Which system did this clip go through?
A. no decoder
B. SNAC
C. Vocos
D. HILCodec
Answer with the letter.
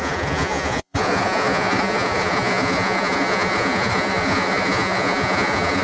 C